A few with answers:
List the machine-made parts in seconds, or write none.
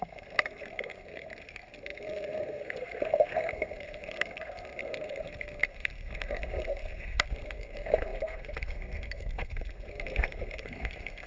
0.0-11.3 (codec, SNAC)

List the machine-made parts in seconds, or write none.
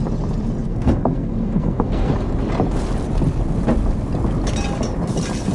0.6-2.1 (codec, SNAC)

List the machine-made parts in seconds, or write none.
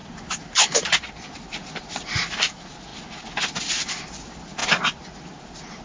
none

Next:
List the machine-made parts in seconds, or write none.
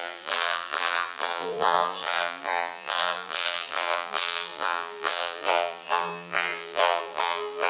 0.0-7.7 (vocoder, BigVGAN v2)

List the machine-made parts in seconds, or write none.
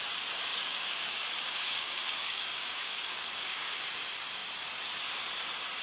0.5-3.8 (codec, DAC)